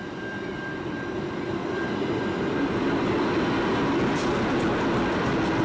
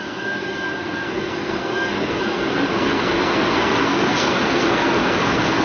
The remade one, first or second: second